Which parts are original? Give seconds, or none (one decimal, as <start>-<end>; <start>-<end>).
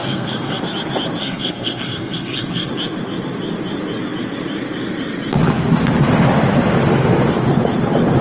0.6-1.2; 2.7-8.2